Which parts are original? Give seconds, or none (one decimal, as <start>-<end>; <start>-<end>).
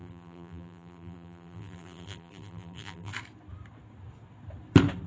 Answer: 3.1-5.1